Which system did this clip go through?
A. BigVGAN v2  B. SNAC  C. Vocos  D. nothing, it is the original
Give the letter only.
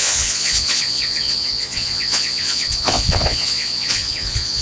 C